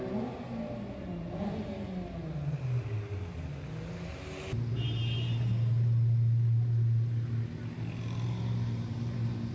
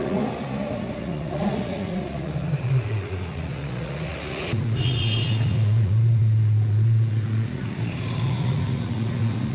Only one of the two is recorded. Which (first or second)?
first